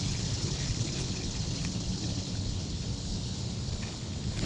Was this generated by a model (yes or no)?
yes